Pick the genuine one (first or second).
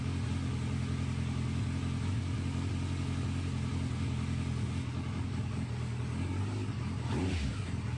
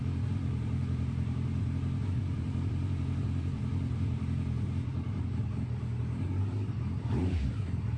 first